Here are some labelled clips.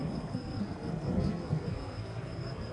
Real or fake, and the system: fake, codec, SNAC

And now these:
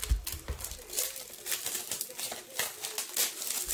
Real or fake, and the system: real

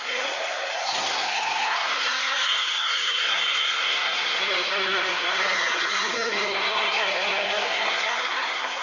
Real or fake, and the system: fake, codec, SNAC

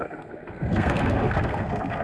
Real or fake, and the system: fake, codec, SNAC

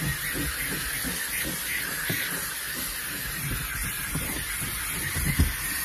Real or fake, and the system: real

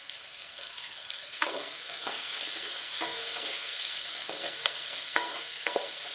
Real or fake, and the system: fake, codec, SNAC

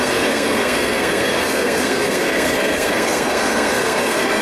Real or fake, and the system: fake, codec, SNAC